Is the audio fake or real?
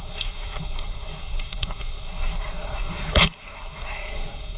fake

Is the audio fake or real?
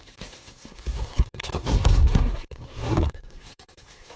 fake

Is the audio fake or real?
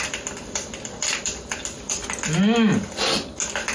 real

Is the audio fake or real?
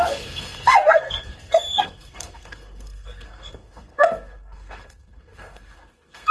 fake